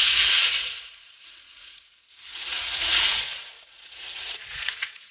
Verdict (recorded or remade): remade